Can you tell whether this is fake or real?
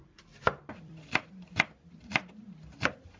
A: fake